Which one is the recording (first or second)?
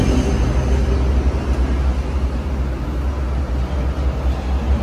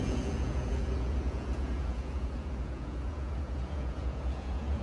first